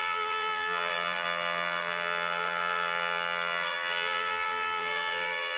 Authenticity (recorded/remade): remade